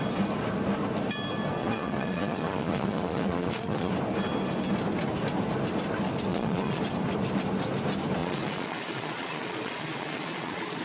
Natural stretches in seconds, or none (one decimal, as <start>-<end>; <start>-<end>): 0.0-1.6; 3.9-6.3; 6.8-8.2